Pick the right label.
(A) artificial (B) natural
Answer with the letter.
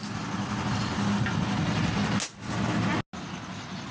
B